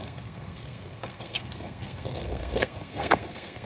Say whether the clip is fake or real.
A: fake